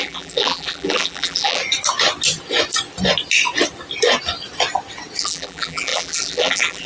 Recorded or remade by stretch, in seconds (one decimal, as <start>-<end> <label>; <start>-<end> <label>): 0.0-1.6 remade; 1.6-5.2 recorded; 5.2-6.9 remade